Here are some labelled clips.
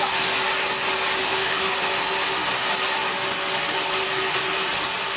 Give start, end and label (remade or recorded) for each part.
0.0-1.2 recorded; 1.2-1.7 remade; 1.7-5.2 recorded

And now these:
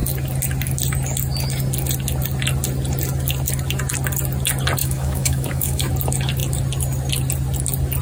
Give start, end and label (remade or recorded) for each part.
0.0-4.8 recorded; 4.8-5.9 remade; 5.9-8.0 recorded

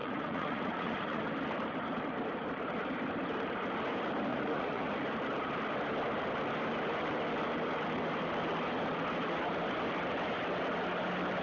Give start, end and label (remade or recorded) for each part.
0.0-1.2 remade; 1.2-4.3 recorded; 4.3-4.9 remade; 4.9-11.4 recorded

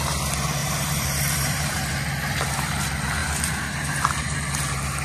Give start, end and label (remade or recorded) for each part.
0.0-0.6 recorded; 0.6-1.9 remade; 1.9-5.0 recorded

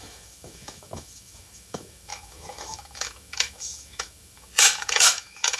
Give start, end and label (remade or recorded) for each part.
0.0-5.6 remade

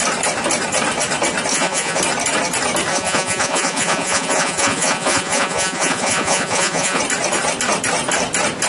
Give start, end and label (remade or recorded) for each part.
0.0-1.5 recorded; 1.5-2.0 remade; 2.0-2.9 recorded; 2.9-7.0 remade; 7.0-8.7 recorded

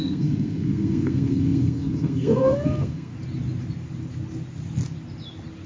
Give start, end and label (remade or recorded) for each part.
0.0-3.1 remade; 3.1-5.7 recorded

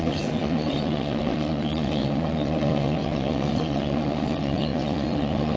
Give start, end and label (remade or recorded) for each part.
0.0-5.6 remade